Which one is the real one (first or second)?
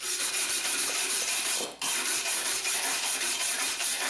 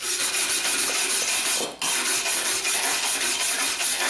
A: second